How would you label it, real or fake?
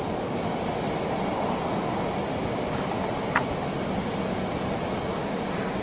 real